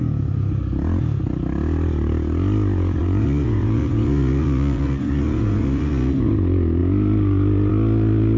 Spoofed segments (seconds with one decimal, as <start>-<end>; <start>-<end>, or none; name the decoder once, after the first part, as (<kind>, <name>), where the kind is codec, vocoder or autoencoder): 3.0-6.3 (vocoder, Vocos)